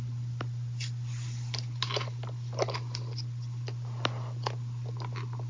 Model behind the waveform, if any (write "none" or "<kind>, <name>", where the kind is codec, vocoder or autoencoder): none